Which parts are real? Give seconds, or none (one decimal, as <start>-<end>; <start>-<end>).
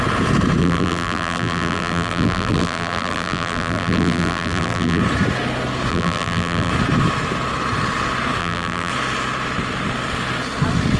0.0-0.6; 5.0-5.9; 6.7-8.4; 8.9-11.0